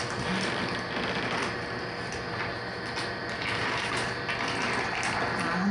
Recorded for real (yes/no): yes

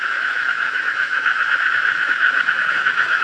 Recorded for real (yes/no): no